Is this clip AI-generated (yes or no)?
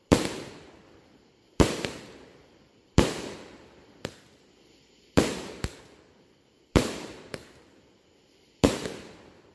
yes